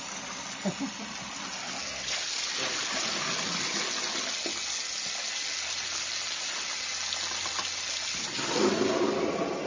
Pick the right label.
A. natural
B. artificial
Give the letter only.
A